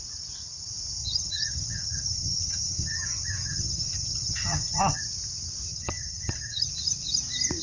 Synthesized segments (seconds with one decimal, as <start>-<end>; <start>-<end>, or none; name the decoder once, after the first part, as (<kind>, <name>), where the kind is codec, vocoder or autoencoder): 1.0-5.0 (vocoder, HiFi-GAN); 5.7-6.7